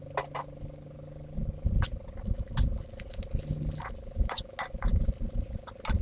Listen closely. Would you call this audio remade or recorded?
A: recorded